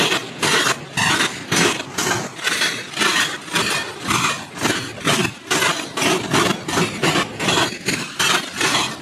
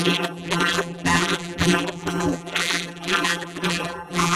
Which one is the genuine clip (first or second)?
first